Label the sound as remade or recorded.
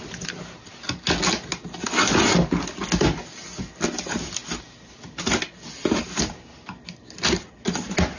recorded